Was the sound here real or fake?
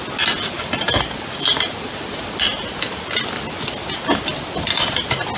real